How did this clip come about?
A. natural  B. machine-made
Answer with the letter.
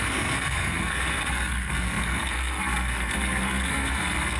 B